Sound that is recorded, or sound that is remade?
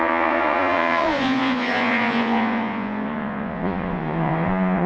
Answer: remade